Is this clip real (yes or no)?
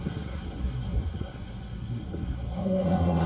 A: no